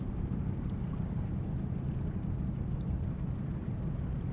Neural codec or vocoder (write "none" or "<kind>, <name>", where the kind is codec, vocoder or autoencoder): none